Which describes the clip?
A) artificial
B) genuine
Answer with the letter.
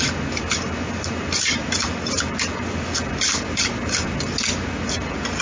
B